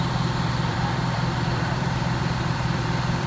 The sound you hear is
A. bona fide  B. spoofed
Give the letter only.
B